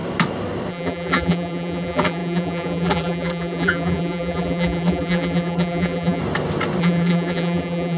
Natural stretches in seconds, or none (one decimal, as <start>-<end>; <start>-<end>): 0.0-0.7; 6.2-6.8